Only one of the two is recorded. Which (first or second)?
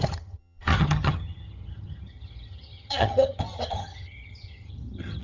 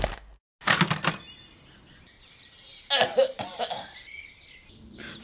second